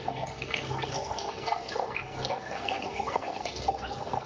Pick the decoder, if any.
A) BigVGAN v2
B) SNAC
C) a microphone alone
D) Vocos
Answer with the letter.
B